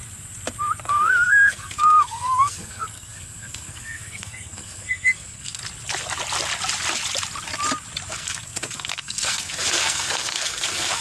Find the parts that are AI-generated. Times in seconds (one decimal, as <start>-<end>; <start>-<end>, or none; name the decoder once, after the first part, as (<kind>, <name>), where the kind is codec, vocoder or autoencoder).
0.8-5.6 (codec, SNAC); 8.1-11.0